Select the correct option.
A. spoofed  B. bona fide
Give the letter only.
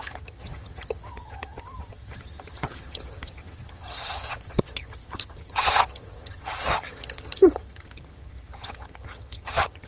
A